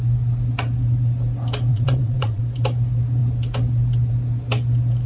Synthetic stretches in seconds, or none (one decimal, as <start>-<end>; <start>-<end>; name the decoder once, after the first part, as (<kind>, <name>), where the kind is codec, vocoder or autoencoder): 1.7-2.4 (vocoder, Vocos)